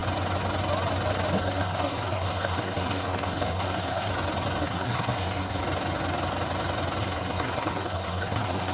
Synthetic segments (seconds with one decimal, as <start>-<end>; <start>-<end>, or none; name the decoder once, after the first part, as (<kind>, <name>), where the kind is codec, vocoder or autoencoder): 1.4-4.1 (codec, SNAC); 4.6-5.6; 7.0-8.7